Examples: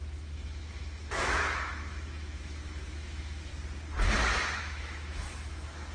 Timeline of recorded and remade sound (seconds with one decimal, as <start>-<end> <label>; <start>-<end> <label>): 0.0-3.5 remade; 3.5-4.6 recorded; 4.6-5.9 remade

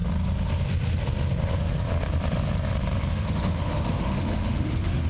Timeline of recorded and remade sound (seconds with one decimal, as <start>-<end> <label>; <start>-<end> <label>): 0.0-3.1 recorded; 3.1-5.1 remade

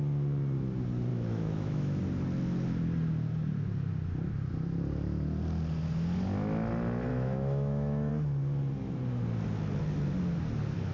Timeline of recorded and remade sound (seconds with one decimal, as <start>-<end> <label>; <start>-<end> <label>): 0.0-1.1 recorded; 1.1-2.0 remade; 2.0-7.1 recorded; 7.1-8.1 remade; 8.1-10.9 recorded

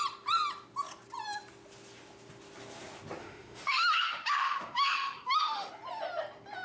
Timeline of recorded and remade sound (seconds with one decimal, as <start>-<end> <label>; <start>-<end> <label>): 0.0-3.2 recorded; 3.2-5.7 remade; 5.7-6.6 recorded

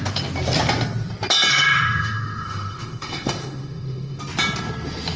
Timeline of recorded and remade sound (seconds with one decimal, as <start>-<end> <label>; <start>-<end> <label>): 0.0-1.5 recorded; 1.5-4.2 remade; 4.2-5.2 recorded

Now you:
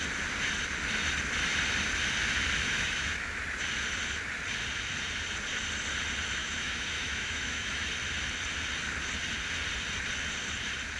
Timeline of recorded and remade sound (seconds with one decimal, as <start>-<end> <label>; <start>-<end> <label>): 0.0-2.6 recorded; 2.6-3.4 remade; 3.4-6.4 recorded; 6.4-7.9 remade; 7.9-11.0 recorded